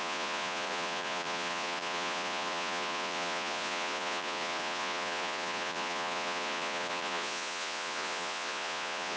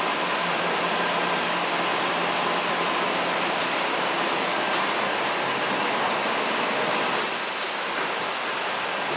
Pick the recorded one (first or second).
second